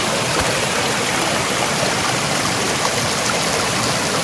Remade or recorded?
recorded